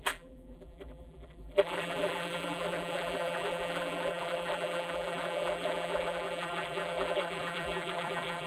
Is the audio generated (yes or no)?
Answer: yes